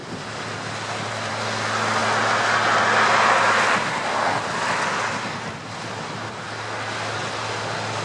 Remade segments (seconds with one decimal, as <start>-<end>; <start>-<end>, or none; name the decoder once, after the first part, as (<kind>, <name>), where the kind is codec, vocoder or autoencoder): none